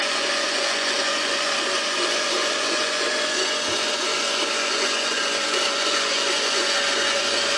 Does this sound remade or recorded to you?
remade